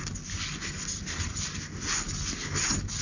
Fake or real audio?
real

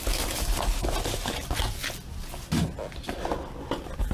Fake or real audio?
real